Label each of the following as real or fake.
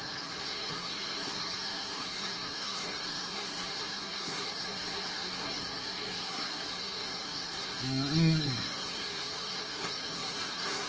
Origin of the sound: fake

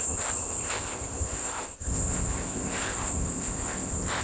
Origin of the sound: fake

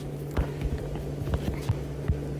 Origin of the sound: real